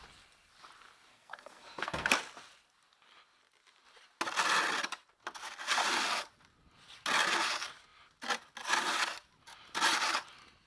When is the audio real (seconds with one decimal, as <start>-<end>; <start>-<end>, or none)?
0.0-1.1; 2.1-10.7